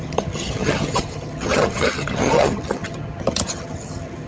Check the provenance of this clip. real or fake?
fake